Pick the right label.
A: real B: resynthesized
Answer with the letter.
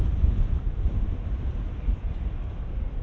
A